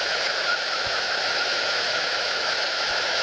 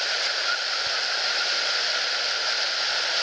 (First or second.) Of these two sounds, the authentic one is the second